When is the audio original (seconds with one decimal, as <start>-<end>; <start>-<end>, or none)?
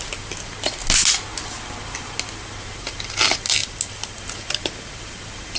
0.0-5.6